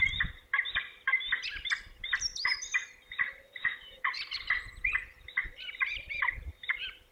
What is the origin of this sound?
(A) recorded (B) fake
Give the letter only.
B